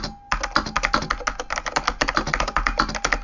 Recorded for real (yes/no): yes